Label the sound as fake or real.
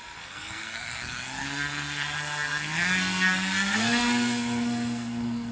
fake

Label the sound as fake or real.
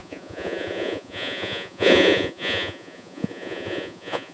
fake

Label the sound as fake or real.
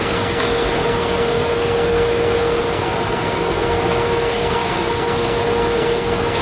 fake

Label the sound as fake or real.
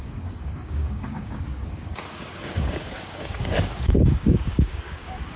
fake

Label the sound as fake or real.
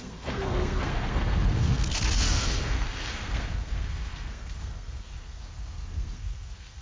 fake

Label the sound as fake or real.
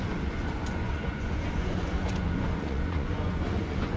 fake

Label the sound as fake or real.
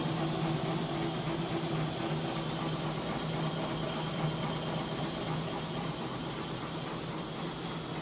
real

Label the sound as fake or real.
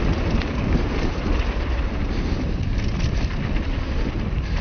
real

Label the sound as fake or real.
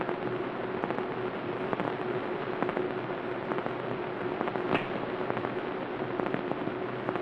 real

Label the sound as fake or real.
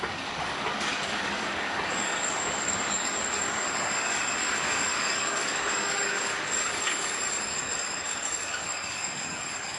fake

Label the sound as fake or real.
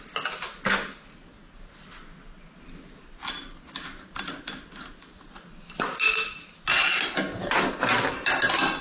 real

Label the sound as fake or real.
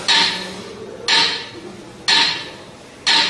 real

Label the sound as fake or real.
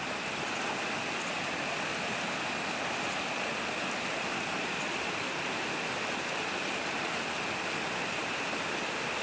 real